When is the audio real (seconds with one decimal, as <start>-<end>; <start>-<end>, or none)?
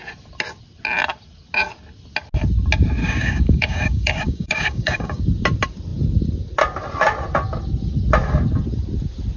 0.0-3.0; 5.2-9.4